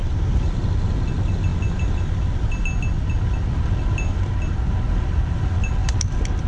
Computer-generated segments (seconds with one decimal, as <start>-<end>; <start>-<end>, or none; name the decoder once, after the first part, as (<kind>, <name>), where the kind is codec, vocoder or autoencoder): none